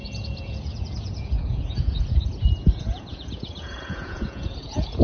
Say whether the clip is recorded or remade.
remade